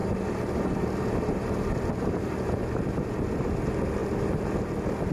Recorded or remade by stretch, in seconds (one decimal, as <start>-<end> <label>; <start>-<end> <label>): 0.0-5.1 recorded